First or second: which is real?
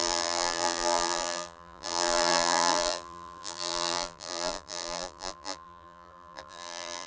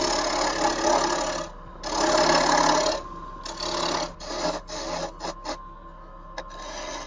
second